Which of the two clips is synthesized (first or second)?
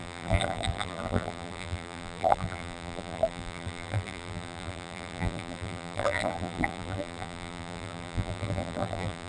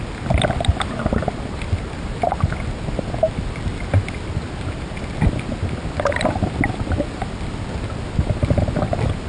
first